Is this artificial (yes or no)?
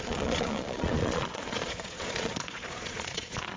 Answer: yes